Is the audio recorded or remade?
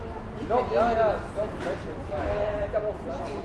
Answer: recorded